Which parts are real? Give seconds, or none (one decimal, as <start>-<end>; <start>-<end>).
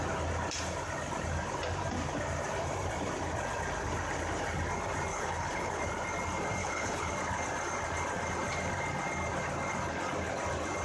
0.0-5.1; 5.8-6.6; 7.1-10.8